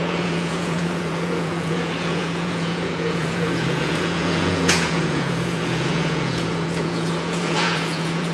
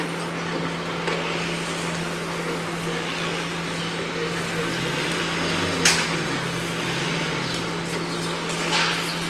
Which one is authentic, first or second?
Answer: second